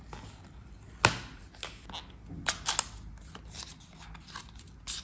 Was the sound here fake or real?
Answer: real